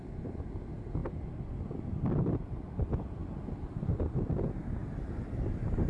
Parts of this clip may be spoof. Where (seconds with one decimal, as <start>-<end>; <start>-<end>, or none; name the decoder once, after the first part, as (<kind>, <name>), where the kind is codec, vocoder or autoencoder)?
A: none